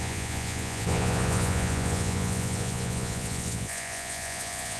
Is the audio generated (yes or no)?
yes